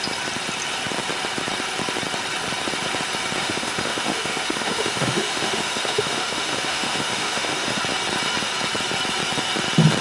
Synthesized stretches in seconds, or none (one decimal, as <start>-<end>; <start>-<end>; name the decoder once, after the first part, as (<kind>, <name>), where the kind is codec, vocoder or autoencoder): 3.4-7.8 (autoencoder, DAC-VAE)